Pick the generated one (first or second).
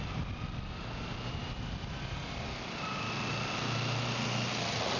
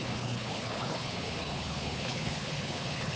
second